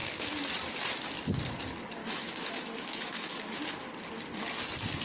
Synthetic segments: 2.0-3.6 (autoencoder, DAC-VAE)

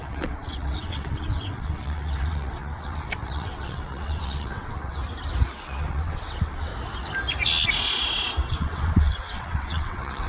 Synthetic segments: 0.0-5.0 (vocoder, WaveNeXt); 5.5-6.7; 8.5-10.3

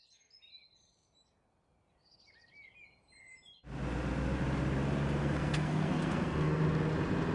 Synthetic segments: 5.2-6.6 (codec, SNAC)

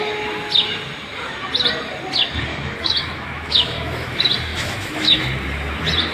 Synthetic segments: 2.5-4.1 (autoencoder, DAC-VAE); 4.5-5.2

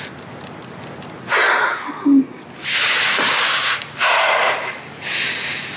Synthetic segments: none